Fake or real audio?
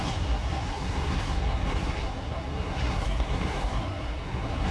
fake